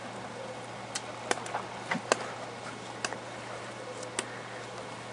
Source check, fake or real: real